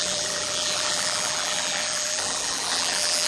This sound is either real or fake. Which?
fake